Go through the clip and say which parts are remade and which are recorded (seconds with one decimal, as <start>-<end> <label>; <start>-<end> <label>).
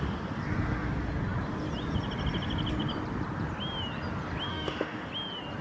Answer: 0.0-4.5 recorded; 4.5-5.1 remade; 5.1-5.6 recorded